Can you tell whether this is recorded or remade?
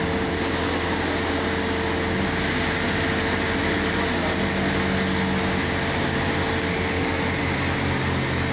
recorded